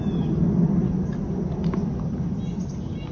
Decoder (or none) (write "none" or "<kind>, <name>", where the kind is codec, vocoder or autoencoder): none